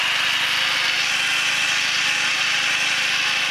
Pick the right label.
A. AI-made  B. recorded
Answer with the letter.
B